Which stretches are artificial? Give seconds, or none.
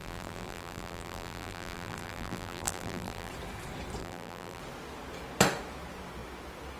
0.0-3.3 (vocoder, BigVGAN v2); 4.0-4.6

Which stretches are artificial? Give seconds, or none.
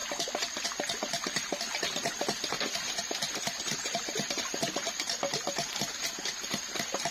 none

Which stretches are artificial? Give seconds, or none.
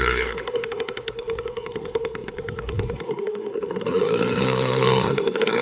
0.0-5.6 (codec, SNAC)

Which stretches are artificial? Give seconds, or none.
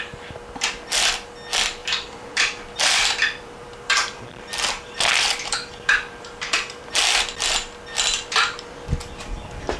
1.8-6.9 (vocoder, BigVGAN v2)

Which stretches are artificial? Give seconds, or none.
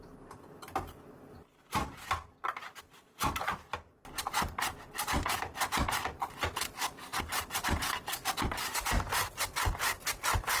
none